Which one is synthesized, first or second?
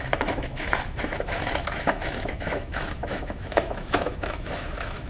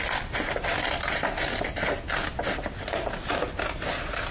first